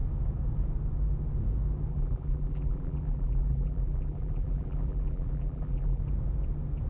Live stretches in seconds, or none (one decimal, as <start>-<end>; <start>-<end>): 0.0-1.9; 6.0-6.9